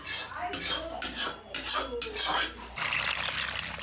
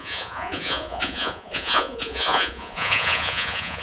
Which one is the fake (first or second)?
second